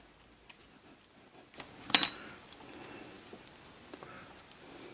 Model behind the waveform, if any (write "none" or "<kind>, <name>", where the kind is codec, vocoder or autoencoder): none